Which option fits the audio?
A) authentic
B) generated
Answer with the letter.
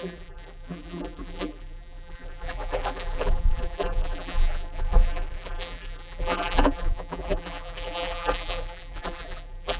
B